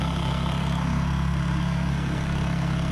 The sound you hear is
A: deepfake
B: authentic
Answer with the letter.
A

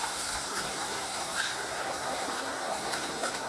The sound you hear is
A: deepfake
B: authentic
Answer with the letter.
A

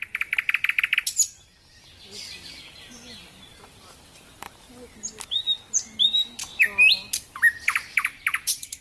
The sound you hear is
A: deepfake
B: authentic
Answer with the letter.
B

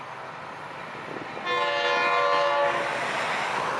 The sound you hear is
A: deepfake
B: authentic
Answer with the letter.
B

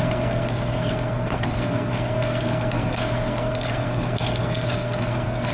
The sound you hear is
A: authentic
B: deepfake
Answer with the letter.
B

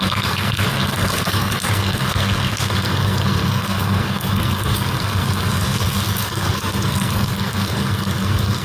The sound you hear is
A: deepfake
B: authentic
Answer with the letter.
A